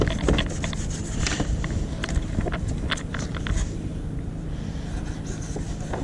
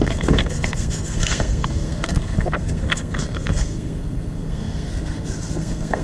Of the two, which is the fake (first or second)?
second